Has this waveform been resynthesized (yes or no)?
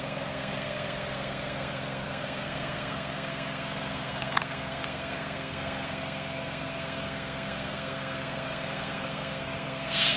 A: yes